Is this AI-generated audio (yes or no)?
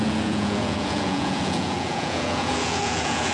yes